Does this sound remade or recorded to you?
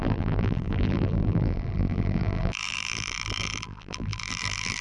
remade